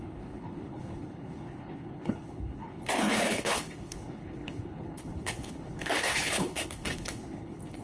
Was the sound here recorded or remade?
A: remade